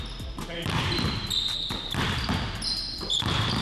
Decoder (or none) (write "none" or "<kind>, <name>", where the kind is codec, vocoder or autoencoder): vocoder, BigVGAN v2